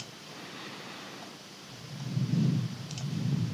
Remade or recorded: remade